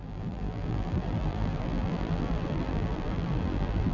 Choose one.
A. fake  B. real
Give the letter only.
A